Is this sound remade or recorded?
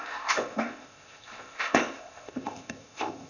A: remade